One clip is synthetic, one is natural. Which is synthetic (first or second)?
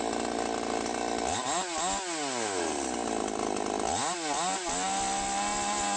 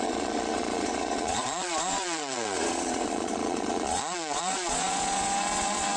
second